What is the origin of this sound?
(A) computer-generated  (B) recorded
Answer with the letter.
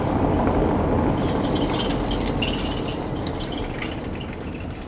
B